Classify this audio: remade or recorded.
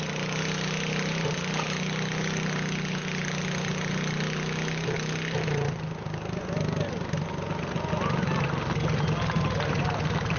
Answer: recorded